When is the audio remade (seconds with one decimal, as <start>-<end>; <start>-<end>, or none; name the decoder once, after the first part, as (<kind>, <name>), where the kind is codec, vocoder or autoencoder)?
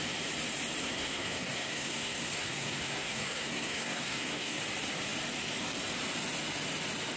0.8-4.6 (codec, SNAC)